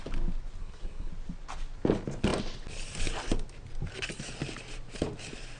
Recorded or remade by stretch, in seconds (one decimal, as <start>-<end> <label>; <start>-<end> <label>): 0.0-0.6 recorded; 0.6-1.1 remade; 1.1-5.6 recorded